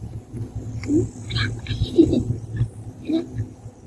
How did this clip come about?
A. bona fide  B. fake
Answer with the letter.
A